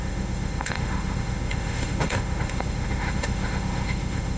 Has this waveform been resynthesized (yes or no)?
yes